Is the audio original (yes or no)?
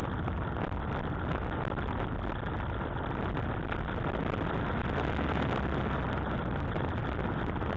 yes